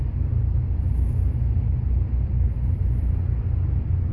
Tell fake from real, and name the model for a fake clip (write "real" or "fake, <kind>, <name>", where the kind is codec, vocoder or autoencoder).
real